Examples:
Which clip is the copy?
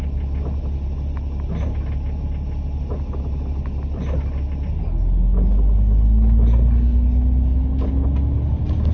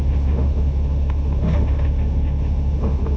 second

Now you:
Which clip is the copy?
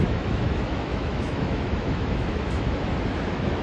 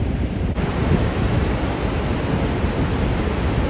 first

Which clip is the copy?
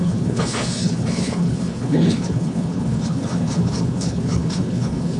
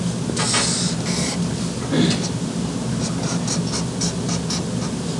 first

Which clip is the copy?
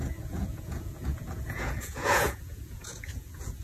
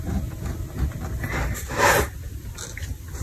first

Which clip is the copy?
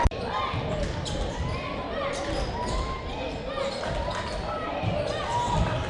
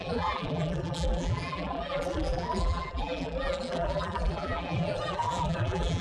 second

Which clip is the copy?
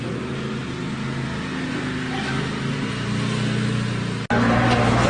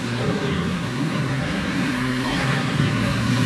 second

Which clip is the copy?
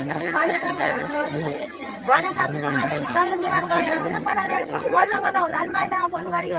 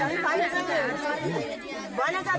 first